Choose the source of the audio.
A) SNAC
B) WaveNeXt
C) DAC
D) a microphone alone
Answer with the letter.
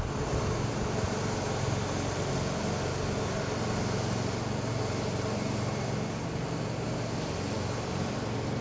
D